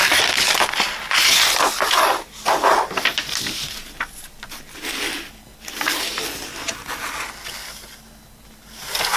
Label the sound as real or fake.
real